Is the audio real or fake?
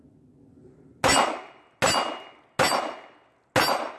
real